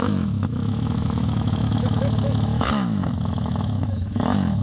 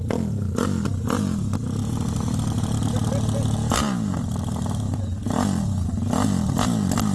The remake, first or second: first